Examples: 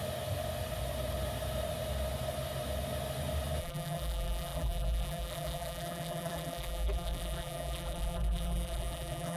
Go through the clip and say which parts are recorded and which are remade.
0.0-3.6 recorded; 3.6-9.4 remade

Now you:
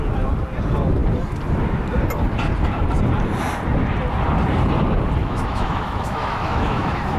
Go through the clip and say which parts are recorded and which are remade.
0.0-5.2 recorded; 5.2-7.2 remade

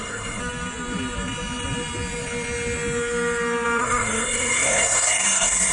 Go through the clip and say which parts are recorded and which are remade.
0.0-0.4 remade; 0.4-3.8 recorded; 3.8-5.7 remade

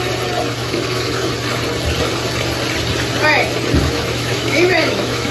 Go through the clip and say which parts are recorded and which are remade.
0.0-0.6 recorded; 0.6-1.3 remade; 1.3-3.8 recorded; 3.8-5.3 remade